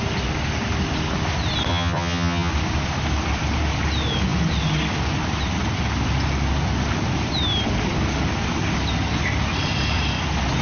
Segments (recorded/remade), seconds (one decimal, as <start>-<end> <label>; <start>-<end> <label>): 0.0-1.7 recorded; 1.7-2.5 remade; 2.5-10.6 recorded